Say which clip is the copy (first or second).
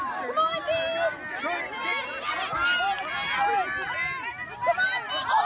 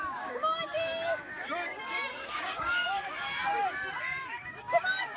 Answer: second